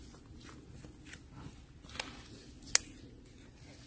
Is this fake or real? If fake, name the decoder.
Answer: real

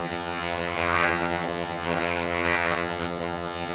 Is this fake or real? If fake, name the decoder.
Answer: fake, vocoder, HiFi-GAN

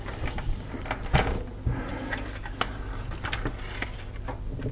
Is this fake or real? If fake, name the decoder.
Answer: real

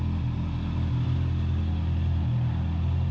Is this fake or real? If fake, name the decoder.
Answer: real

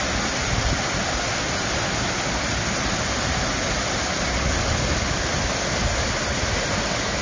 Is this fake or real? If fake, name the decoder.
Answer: real